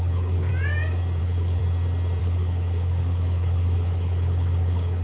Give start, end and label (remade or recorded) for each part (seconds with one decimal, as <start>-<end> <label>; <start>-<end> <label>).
0.0-0.5 remade; 0.5-1.2 recorded; 1.2-1.6 remade; 1.6-2.2 recorded; 2.2-5.0 remade